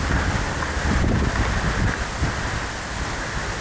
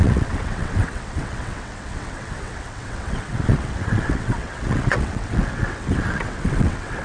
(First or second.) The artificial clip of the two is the second